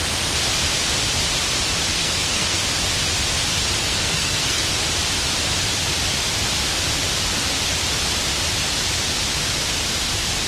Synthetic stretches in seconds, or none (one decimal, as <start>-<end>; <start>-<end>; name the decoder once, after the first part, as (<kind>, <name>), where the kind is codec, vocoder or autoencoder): 1.9-2.6 (codec, SNAC); 3.8-4.6